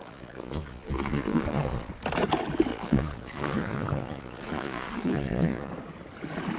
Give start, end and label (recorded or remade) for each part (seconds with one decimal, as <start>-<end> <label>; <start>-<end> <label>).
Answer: 0.0-1.9 remade; 1.9-2.7 recorded; 2.7-5.7 remade; 5.7-6.6 recorded